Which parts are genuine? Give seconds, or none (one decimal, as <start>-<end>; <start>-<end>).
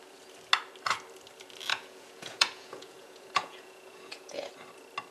0.0-1.7; 4.5-5.1